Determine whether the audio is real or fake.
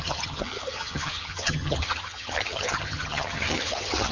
fake